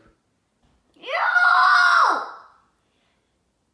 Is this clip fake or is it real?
real